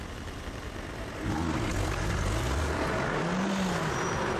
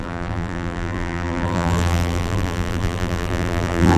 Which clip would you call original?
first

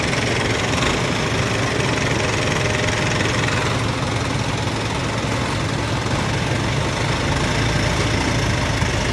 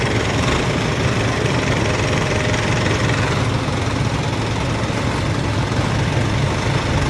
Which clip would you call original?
first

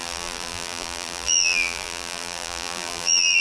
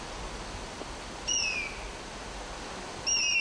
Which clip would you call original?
second